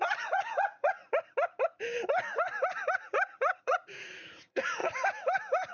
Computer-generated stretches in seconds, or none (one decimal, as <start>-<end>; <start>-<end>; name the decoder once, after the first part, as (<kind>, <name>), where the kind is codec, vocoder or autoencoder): 0.0-1.0 (vocoder, Vocos); 3.6-4.8